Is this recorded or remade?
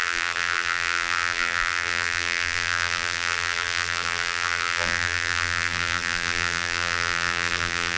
remade